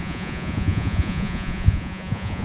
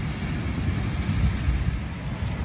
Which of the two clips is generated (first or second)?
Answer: first